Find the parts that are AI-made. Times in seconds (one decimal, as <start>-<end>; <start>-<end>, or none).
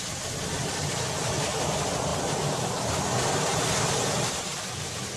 none